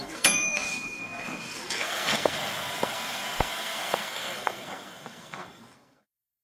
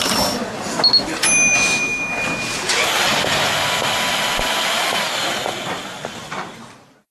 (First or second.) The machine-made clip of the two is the first